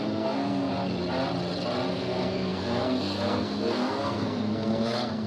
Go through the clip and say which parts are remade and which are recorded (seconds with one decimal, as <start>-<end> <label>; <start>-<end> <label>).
0.0-0.7 remade; 0.7-1.9 recorded; 1.9-5.3 remade